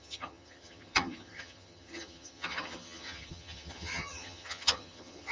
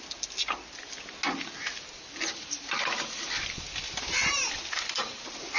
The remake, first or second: first